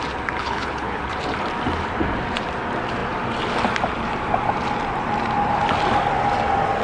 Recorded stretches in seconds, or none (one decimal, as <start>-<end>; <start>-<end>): 0.0-0.4; 1.0-6.8